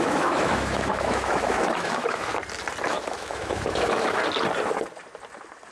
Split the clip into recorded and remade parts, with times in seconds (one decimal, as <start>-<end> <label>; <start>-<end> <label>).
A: 0.0-2.3 remade; 2.3-2.9 recorded; 2.9-4.2 remade; 4.2-5.7 recorded